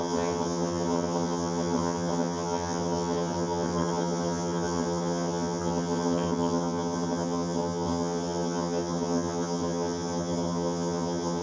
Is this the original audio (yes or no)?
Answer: no